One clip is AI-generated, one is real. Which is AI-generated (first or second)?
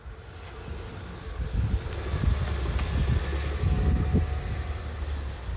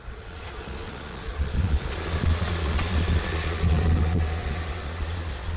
second